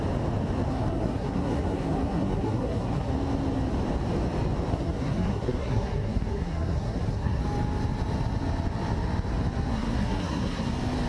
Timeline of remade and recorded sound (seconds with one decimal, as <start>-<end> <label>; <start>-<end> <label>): 0.0-0.7 recorded; 0.7-3.1 remade; 3.1-4.7 recorded; 4.7-7.4 remade; 7.4-9.7 recorded; 9.7-10.7 remade; 10.7-11.1 recorded